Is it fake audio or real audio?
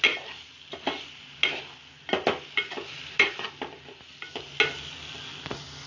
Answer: real